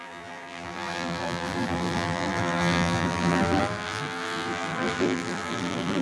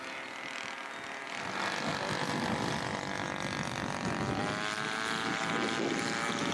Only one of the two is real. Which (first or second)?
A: second